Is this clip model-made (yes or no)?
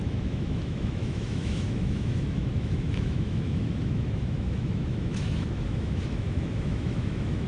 yes